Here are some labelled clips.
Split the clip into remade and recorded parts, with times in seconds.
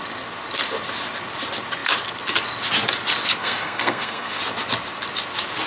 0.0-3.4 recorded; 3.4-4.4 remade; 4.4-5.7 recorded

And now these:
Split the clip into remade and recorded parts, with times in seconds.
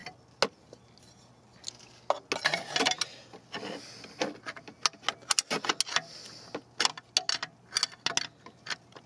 0.0-9.1 recorded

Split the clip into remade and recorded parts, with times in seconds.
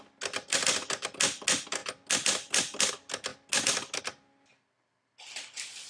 0.0-5.9 recorded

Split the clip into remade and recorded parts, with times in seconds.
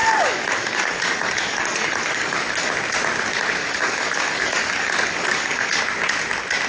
0.0-2.7 remade; 2.7-3.6 recorded; 3.6-5.8 remade; 5.8-6.7 recorded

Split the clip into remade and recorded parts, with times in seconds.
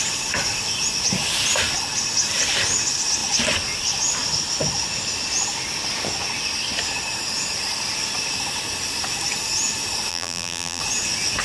0.0-10.1 recorded; 10.1-10.8 remade; 10.8-11.4 recorded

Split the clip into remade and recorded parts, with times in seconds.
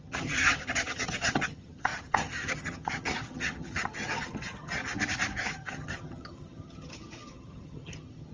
0.0-4.8 remade; 4.8-5.5 recorded; 5.5-8.3 remade